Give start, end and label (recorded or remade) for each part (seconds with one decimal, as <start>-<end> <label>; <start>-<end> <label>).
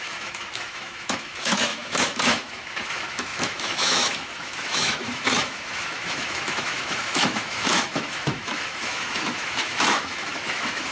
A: 0.0-10.9 remade